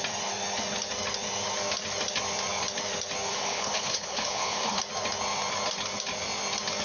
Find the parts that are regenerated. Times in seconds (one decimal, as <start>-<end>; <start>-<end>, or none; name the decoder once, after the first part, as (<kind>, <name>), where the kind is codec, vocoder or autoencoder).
3.3-4.8 (codec, HILCodec)